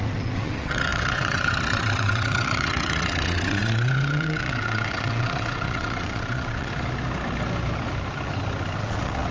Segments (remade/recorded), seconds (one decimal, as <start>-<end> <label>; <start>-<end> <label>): 0.0-6.7 remade; 6.7-8.8 recorded; 8.8-9.3 remade